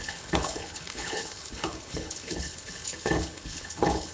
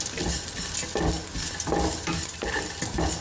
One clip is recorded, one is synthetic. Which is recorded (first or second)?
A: second